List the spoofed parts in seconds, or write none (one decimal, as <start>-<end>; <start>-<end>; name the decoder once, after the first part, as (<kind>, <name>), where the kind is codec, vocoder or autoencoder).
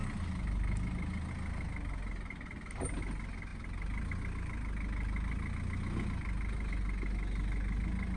none